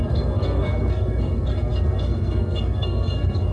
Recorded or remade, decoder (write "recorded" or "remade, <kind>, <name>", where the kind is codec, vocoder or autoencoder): remade, codec, SNAC